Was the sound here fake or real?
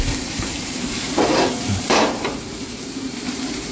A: fake